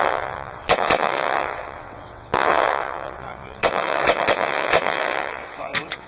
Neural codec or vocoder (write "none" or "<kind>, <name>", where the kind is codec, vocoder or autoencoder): vocoder, WaveNeXt